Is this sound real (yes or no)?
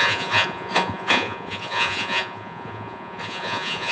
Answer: no